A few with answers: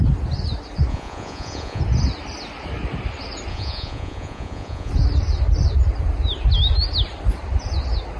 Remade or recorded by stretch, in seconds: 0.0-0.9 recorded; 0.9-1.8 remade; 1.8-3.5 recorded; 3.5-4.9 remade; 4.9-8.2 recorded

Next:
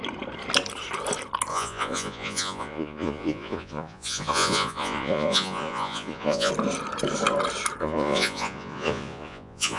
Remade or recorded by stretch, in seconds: 0.0-1.5 recorded; 1.5-6.5 remade; 6.5-7.8 recorded; 7.8-9.8 remade